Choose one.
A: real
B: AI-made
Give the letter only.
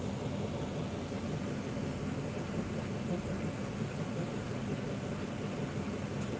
A